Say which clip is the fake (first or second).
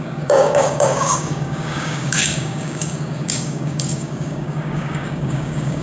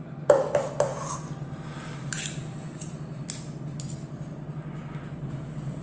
first